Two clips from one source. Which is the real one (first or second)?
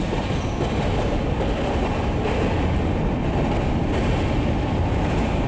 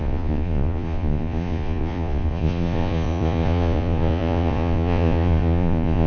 first